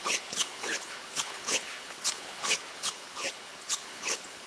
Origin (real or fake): fake